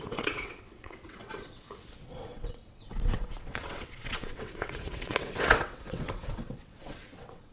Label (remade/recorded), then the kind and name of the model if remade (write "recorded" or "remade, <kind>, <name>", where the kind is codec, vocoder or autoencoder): remade, vocoder, WaveNeXt